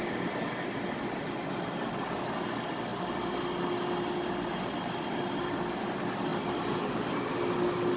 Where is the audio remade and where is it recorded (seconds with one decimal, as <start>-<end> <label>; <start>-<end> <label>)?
0.0-8.0 recorded